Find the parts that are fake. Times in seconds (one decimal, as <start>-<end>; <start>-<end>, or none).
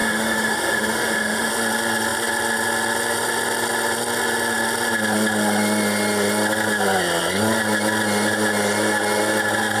0.0-1.5